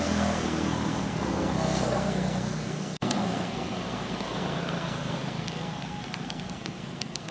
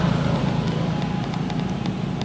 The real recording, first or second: second